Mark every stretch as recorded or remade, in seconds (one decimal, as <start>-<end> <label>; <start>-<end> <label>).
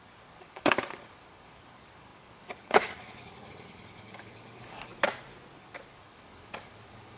0.0-4.9 remade; 4.9-5.6 recorded; 5.6-7.2 remade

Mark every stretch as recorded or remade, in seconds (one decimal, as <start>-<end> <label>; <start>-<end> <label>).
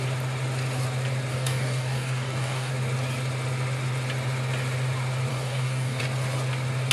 0.0-1.3 recorded; 1.3-2.7 remade; 2.7-5.3 recorded; 5.3-6.0 remade; 6.0-6.9 recorded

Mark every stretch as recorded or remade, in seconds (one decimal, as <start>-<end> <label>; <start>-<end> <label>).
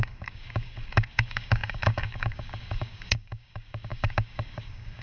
0.0-5.0 remade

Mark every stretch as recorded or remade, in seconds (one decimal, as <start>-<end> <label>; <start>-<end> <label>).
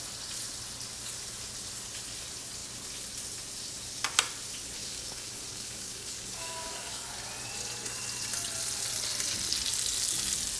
0.0-4.8 recorded; 4.8-7.1 remade; 7.1-10.6 recorded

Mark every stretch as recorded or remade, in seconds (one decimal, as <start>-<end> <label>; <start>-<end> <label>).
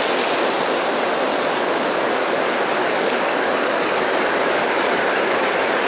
0.0-1.3 recorded; 1.3-2.4 remade; 2.4-2.8 recorded; 2.8-5.9 remade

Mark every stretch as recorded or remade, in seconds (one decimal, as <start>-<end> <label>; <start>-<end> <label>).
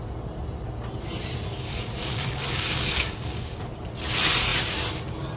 0.0-1.5 recorded; 1.5-3.6 remade; 3.6-5.4 recorded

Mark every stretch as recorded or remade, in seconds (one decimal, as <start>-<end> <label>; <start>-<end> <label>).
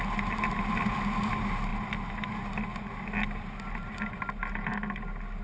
0.0-5.4 recorded